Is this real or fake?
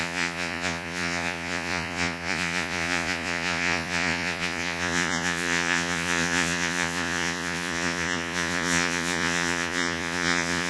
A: fake